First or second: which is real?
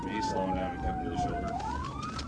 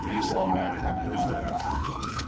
first